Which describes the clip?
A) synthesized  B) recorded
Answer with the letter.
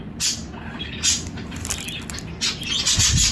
B